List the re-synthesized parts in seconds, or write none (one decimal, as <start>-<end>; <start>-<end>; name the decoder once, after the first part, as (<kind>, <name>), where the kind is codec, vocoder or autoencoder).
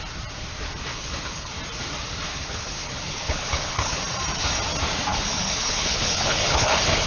0.9-1.5 (codec, HILCodec); 2.3-4.0; 5.1-7.1